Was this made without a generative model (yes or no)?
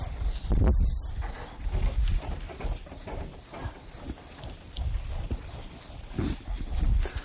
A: yes